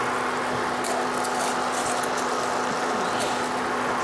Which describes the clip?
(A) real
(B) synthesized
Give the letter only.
A